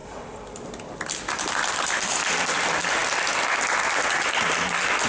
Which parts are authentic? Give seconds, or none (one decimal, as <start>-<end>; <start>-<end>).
0.0-5.1